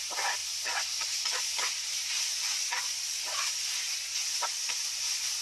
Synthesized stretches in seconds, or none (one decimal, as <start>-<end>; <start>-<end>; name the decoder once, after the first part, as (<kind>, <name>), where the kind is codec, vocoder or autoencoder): none